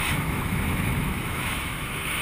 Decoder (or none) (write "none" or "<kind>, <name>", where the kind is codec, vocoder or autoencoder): autoencoder, DAC-VAE